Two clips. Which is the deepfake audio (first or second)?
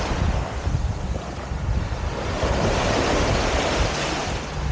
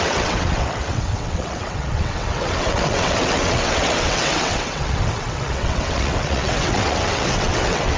second